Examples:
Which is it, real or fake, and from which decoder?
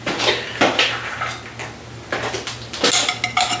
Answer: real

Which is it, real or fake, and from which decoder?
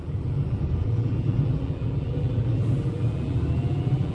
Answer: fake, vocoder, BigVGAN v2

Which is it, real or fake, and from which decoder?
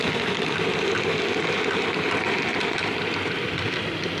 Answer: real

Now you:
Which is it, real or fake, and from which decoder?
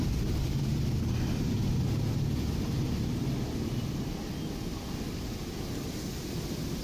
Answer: real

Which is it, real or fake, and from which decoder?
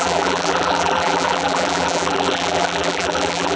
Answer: fake, vocoder, BigVGAN v2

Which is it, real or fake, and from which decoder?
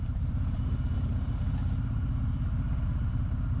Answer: fake, vocoder, BigVGAN v2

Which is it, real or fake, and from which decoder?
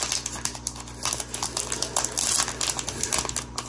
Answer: real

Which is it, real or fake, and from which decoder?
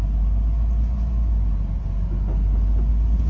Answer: real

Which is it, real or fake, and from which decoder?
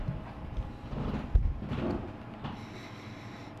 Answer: real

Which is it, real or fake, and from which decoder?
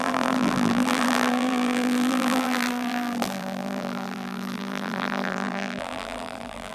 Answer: fake, vocoder, BigVGAN v2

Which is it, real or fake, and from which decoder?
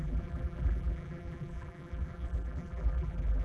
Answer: fake, vocoder, BigVGAN v2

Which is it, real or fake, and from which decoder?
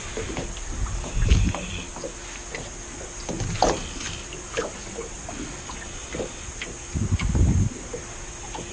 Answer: real